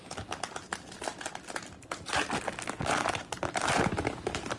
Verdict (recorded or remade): recorded